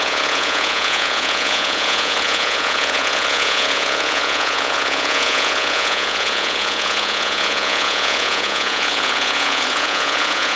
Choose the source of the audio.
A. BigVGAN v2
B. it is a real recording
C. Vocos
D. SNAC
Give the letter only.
C